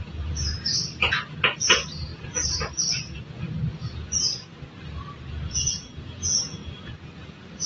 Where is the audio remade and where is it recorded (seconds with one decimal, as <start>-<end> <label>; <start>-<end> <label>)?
0.0-4.5 remade; 4.5-5.5 recorded; 5.5-7.7 remade